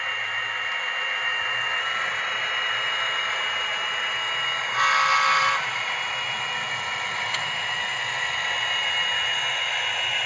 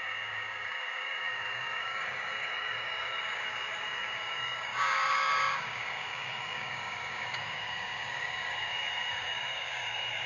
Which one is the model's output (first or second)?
second